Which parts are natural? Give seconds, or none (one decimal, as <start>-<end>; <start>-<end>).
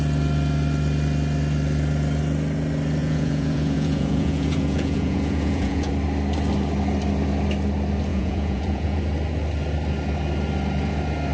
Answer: 0.0-3.0; 5.9-8.1; 9.0-11.3